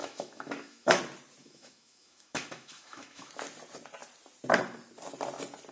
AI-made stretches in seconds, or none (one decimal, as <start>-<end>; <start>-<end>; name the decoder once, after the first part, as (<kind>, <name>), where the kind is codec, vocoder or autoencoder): 0.0-1.0 (autoencoder, DAC-VAE); 1.4-3.3